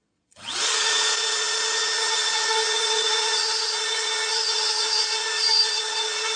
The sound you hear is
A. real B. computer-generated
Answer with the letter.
B